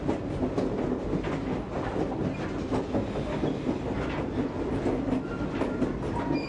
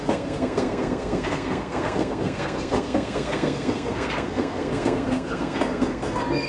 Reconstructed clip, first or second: second